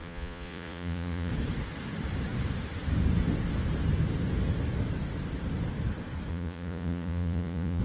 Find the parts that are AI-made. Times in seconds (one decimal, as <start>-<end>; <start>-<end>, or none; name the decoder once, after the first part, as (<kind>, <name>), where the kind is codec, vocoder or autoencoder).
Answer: 0.0-1.3 (vocoder, Vocos); 6.3-7.8